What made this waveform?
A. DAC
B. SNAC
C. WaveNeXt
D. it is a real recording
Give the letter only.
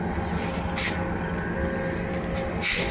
D